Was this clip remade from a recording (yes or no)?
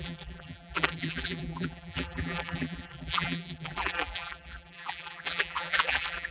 yes